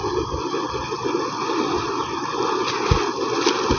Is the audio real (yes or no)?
yes